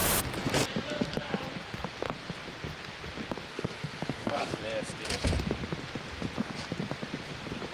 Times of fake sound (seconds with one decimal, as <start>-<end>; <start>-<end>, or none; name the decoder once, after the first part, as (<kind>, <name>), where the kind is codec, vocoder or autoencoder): 3.5-4.6 (autoencoder, DAC-VAE)